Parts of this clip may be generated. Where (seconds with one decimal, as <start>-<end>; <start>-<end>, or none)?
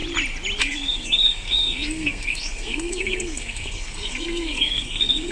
0.6-5.3